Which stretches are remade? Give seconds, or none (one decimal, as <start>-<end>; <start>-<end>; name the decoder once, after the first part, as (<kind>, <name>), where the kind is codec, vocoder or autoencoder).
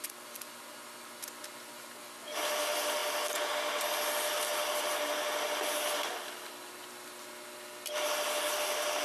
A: none